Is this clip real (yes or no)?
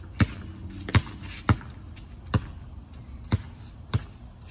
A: yes